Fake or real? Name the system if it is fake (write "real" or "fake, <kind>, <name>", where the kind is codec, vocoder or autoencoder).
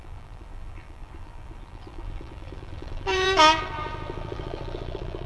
fake, vocoder, BigVGAN v2